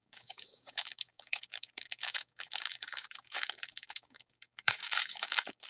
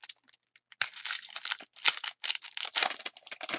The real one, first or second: second